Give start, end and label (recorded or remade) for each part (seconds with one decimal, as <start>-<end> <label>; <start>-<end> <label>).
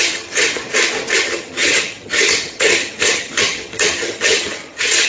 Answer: 0.0-0.6 remade; 0.6-1.2 recorded; 1.2-5.1 remade